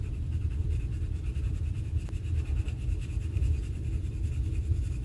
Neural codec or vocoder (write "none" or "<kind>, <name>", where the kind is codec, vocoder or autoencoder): vocoder, BigVGAN v2